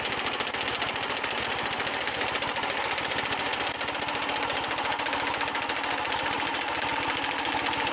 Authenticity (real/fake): real